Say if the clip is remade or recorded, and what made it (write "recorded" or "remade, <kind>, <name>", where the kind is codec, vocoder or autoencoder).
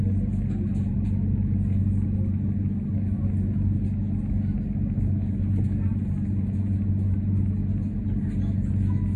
recorded